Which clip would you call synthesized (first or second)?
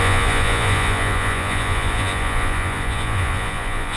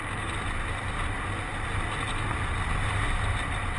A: first